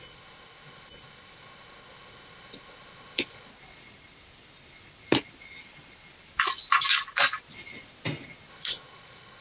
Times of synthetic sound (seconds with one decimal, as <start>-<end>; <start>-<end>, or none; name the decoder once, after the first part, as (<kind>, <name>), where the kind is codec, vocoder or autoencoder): 0.0-3.5 (codec, HILCodec); 8.5-9.4